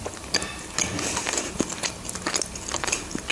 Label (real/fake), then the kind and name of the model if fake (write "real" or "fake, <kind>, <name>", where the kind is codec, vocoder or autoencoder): real